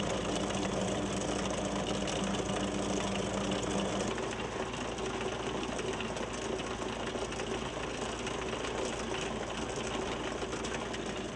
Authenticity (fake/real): real